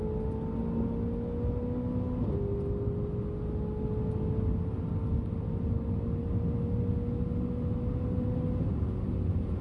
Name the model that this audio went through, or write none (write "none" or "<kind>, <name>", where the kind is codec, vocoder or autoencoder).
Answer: none